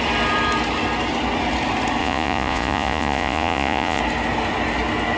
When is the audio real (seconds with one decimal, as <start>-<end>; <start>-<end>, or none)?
0.0-2.0; 4.0-5.2